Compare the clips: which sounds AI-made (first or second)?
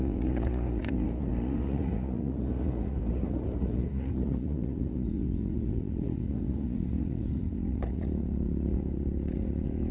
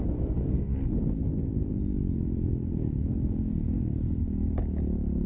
first